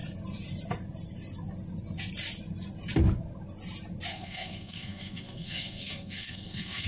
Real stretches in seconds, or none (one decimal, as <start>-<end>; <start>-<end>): 0.0-4.1